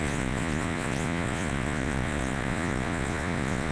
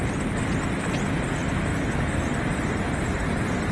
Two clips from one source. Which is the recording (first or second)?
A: second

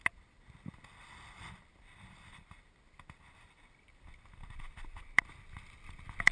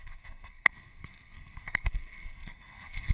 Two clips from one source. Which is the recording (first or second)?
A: first